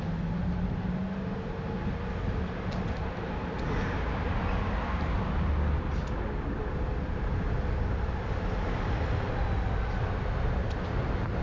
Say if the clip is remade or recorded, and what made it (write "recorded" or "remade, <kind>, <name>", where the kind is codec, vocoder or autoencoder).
recorded